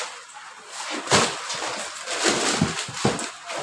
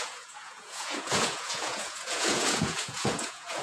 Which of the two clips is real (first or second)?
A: first